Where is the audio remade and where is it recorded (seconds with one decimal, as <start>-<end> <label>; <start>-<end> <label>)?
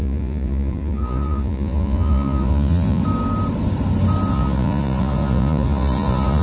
0.0-3.0 remade; 3.0-4.3 recorded; 4.3-6.4 remade